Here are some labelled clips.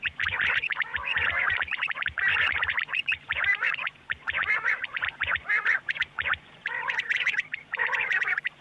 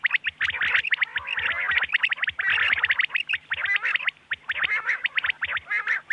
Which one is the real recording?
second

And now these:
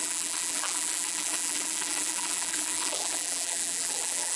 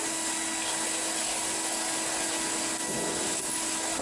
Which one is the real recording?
second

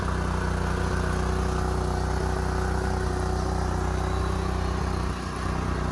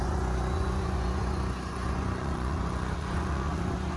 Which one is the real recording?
first